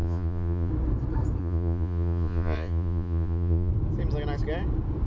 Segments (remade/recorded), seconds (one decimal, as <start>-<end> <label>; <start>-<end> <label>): 0.0-0.7 remade; 0.7-1.4 recorded; 1.4-3.7 remade; 3.7-5.1 recorded